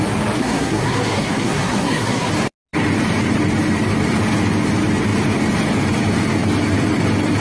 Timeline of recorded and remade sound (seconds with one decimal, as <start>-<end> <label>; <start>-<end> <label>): 0.0-0.4 recorded; 0.4-2.3 remade; 2.3-7.4 recorded